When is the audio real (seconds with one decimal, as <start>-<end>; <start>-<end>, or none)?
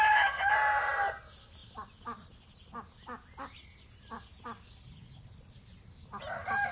0.0-6.7